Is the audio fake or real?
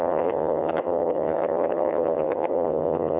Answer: fake